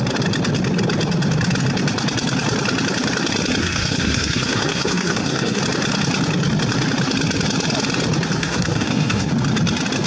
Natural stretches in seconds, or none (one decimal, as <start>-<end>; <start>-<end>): 0.0-3.6; 5.6-8.4; 9.3-10.1